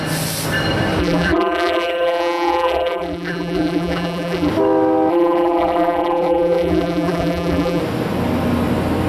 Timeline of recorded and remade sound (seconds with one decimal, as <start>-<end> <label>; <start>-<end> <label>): 0.0-1.0 recorded; 1.0-4.5 remade; 4.5-5.1 recorded; 5.1-7.8 remade; 7.8-9.1 recorded